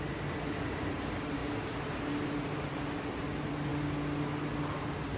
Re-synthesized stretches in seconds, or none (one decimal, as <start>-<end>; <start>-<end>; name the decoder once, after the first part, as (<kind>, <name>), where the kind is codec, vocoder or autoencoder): none